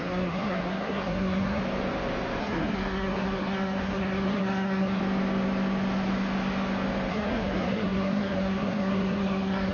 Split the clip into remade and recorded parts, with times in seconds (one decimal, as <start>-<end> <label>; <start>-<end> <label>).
0.0-1.6 remade; 1.6-2.4 recorded; 2.4-5.0 remade; 5.0-7.1 recorded; 7.1-9.7 remade